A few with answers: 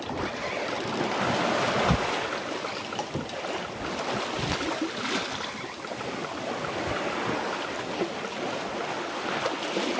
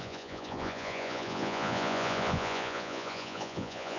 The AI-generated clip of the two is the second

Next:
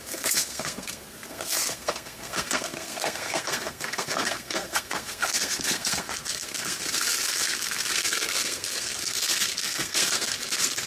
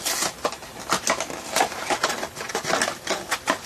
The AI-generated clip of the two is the first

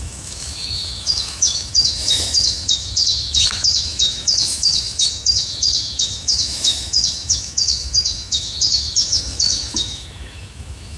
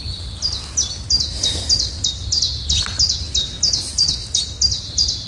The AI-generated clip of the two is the first